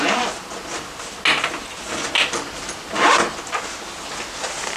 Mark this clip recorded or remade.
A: recorded